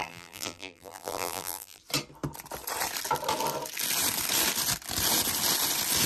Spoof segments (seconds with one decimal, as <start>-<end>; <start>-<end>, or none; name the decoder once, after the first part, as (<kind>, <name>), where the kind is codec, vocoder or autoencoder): 0.0-1.8 (vocoder, BigVGAN v2)